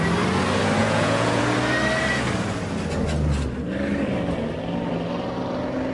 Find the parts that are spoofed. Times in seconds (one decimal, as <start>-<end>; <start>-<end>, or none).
0.8-1.4